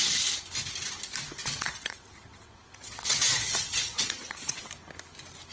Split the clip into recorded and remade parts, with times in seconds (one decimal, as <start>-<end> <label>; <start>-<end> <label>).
0.0-1.4 recorded; 1.4-4.7 remade; 4.7-5.5 recorded